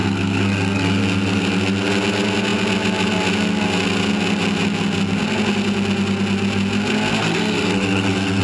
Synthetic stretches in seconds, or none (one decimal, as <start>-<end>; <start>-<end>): 0.0-1.0; 7.2-8.4